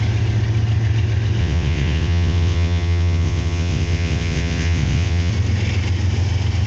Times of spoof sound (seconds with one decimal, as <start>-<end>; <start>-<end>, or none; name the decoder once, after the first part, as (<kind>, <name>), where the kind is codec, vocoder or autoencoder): 1.4-5.3 (vocoder, WaveNeXt)